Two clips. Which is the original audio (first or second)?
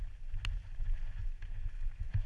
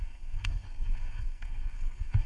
first